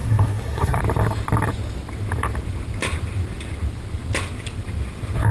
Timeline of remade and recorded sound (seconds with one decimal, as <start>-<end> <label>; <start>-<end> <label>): 0.0-0.8 remade; 0.8-5.3 recorded